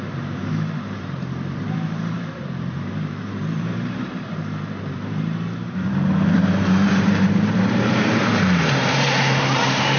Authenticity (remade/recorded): remade